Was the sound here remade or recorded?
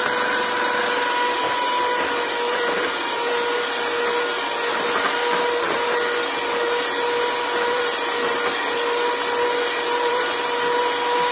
remade